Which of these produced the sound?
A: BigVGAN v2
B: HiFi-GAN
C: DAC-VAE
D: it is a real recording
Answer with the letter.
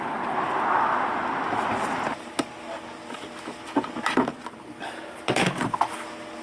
D